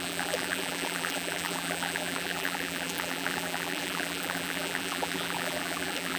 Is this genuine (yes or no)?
no